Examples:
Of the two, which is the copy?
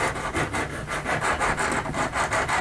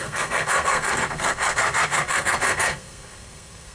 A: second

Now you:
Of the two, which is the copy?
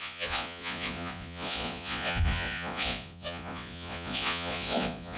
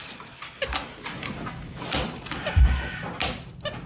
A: first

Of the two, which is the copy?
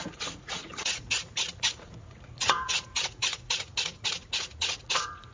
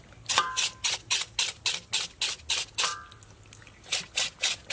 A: first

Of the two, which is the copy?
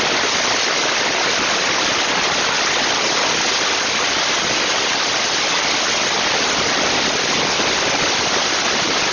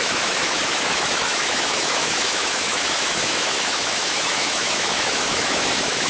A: second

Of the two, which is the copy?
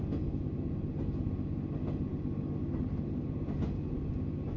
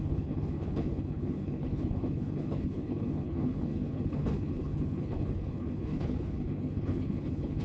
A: second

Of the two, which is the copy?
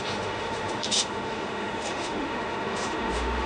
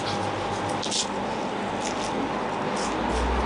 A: first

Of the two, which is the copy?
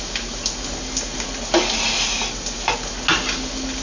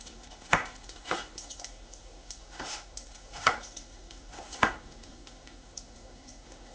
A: second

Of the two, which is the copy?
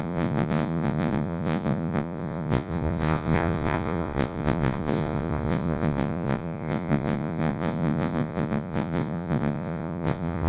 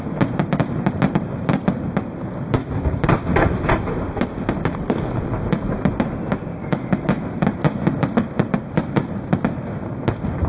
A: first